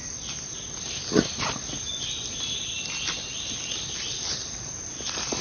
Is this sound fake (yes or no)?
no